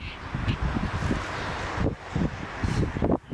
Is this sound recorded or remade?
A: recorded